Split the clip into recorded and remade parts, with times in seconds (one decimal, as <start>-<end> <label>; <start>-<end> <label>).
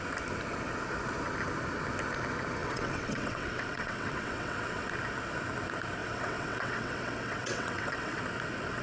0.0-2.6 recorded; 2.6-4.9 remade; 4.9-6.0 recorded; 6.0-8.2 remade; 8.2-8.8 recorded